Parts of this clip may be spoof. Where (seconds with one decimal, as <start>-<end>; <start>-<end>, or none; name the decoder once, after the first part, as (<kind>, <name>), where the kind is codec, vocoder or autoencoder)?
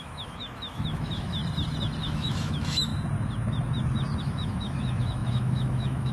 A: 0.0-1.4 (autoencoder, DAC-VAE); 2.0-2.9; 4.2-6.1